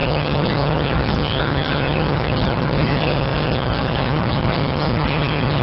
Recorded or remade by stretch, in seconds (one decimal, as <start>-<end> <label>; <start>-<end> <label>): 0.0-5.6 remade

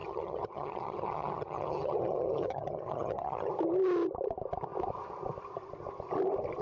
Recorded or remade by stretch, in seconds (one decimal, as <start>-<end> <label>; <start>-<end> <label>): 0.0-3.5 remade; 3.5-6.6 recorded